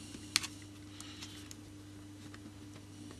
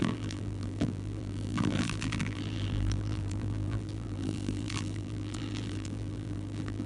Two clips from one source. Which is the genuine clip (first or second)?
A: first